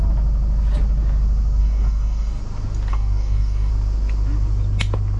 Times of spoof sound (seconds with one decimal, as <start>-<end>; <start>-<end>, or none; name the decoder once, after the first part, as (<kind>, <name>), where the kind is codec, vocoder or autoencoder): 1.6-2.4 (codec, DAC); 2.9-3.7